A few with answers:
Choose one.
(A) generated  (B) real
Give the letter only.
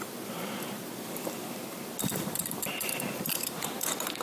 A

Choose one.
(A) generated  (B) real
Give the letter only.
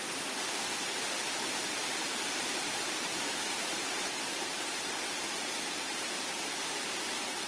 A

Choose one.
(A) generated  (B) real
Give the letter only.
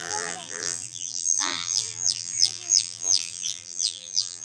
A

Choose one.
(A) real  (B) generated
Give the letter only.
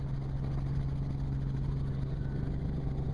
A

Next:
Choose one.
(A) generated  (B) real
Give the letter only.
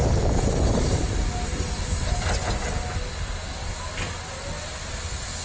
B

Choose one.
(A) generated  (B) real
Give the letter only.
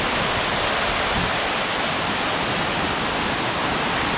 A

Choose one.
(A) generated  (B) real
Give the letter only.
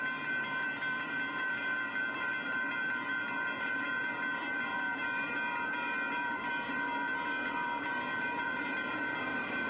A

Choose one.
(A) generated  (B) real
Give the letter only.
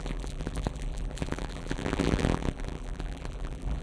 A